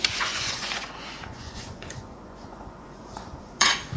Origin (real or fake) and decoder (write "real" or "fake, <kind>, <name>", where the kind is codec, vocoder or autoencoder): fake, vocoder, Vocos